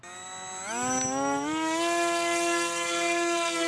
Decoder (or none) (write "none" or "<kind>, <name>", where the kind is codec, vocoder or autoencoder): none